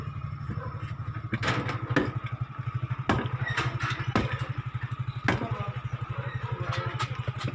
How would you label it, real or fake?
real